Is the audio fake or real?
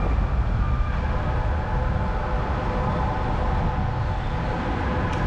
real